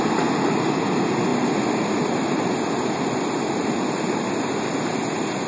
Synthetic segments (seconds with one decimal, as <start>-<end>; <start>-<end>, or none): none